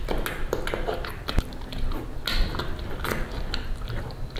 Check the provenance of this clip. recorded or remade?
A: recorded